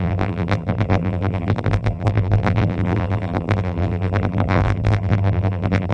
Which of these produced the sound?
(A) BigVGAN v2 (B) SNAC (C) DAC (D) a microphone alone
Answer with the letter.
A